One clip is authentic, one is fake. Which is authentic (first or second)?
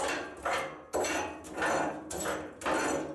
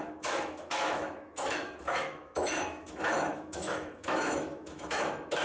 first